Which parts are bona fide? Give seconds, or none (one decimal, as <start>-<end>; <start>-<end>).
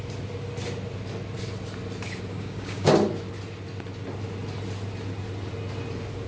0.0-2.3; 2.9-6.3